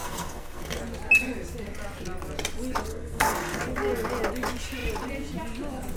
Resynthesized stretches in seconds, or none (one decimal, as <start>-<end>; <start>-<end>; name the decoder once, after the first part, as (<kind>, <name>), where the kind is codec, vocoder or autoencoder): 0.0-0.8 (codec, SNAC); 2.9-3.6